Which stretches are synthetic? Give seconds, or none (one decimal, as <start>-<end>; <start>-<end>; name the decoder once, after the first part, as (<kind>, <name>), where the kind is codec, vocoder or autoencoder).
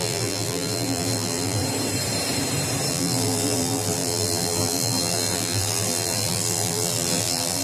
0.0-1.6 (vocoder, BigVGAN v2); 2.9-7.6